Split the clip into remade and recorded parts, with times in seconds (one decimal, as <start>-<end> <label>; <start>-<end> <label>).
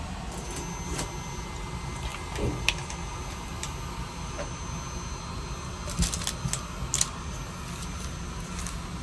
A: 0.0-9.0 recorded